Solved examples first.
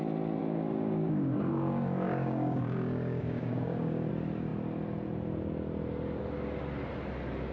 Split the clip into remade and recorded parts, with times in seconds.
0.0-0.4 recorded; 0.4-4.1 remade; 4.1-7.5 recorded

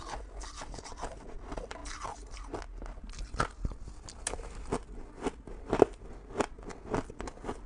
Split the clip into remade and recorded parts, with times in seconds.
0.0-7.7 recorded

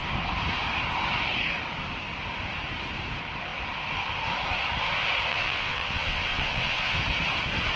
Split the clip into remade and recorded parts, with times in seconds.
0.0-5.3 recorded; 5.3-7.0 remade; 7.0-7.8 recorded